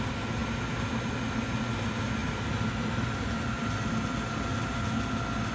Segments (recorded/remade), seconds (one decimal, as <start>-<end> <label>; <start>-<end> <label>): 0.0-5.5 recorded